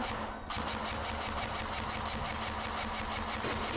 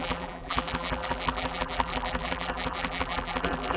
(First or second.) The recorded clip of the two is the first